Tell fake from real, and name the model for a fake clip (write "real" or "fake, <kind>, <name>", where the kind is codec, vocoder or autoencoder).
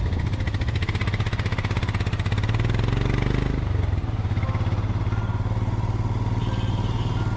real